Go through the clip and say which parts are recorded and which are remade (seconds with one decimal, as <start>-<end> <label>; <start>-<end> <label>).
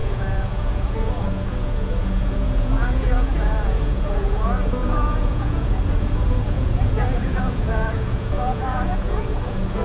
0.0-9.8 remade